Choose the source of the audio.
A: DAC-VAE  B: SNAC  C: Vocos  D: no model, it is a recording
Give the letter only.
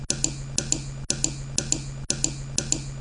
D